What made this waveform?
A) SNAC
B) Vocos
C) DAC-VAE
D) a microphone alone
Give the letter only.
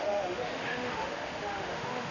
C